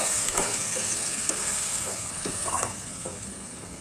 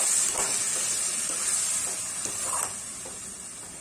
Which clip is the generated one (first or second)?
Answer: first